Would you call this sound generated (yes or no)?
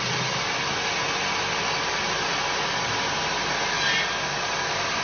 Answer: no